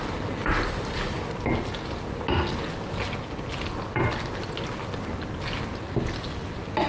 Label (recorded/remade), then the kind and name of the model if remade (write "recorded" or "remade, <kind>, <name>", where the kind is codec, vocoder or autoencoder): recorded